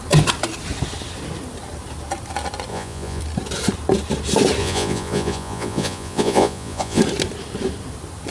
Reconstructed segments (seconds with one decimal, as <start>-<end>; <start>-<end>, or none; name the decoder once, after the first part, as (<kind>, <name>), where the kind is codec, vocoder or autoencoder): 2.7-3.2 (vocoder, Vocos); 4.6-7.0

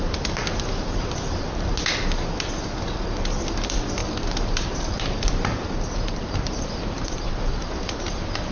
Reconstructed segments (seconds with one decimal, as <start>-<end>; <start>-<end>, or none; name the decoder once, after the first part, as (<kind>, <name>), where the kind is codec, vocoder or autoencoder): 4.0-7.3 (vocoder, BigVGAN v2)

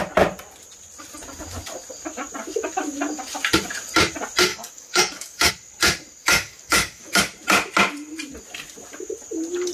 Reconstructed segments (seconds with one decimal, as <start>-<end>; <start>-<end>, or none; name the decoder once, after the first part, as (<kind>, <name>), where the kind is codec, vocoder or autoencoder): 4.5-5.5 (codec, DAC); 6.2-7.2

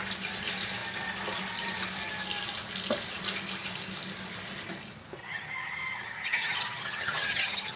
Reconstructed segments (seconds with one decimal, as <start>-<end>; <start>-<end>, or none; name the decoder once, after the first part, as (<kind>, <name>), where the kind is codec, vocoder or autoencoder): 5.2-7.8 (vocoder, HiFi-GAN)

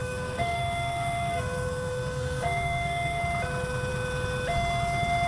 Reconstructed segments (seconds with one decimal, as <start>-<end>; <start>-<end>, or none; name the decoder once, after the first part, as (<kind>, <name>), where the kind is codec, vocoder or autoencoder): 0.0-3.2 (codec, SNAC)

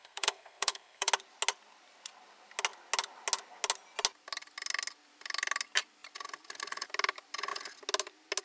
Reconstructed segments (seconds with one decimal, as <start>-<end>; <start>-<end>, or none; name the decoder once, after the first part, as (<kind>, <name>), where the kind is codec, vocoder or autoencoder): 0.0-1.1 (codec, SNAC)

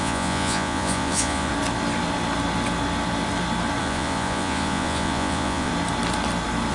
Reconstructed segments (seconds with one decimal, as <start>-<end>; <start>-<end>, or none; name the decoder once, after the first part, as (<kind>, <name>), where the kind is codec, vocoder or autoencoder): 0.0-1.5 (vocoder, Vocos); 3.8-5.7